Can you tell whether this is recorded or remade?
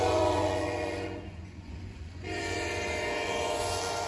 remade